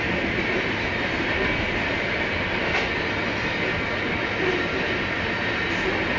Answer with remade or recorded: recorded